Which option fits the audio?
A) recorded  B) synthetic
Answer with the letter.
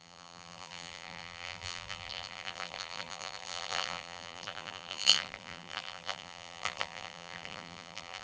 B